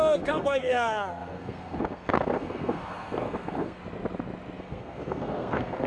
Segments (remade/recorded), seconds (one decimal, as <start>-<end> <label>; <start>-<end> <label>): 0.0-3.8 remade; 3.8-4.6 recorded; 4.6-5.9 remade